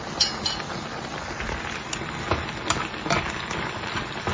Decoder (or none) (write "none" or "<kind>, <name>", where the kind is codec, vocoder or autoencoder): none